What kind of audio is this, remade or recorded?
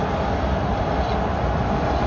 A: recorded